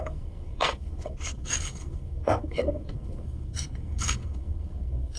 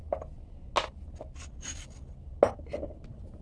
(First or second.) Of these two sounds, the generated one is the first